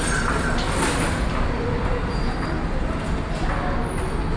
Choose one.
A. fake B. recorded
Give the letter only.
B